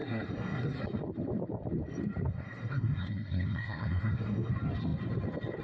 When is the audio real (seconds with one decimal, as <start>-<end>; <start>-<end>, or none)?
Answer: 0.8-2.3; 4.5-5.6